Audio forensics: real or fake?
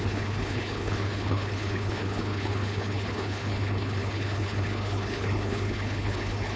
fake